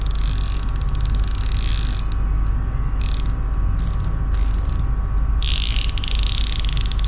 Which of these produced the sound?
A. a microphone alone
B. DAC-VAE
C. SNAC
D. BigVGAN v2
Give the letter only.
A